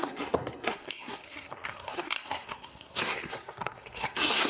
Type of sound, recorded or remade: remade